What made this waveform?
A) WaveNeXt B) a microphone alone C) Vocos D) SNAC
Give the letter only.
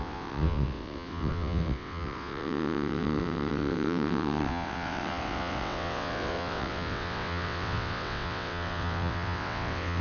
A